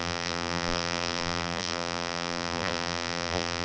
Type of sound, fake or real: fake